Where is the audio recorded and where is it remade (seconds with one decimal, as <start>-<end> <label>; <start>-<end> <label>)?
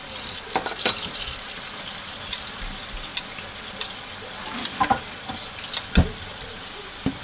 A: 0.0-7.2 recorded